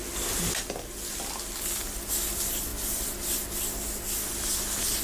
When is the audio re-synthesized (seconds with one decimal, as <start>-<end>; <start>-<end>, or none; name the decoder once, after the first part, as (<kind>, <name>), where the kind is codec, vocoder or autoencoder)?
none